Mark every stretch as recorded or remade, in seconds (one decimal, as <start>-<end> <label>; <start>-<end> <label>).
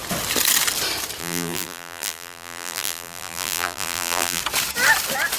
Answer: 0.0-1.2 recorded; 1.2-4.4 remade; 4.4-5.4 recorded